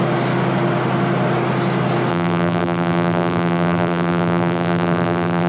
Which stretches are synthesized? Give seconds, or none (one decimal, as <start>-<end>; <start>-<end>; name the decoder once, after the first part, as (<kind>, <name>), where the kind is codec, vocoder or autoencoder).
2.1-5.5 (vocoder, BigVGAN v2)